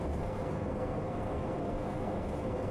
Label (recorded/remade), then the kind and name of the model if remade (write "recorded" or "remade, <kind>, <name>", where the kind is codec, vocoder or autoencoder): remade, codec, SNAC